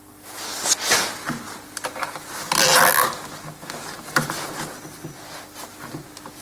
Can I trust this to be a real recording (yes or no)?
yes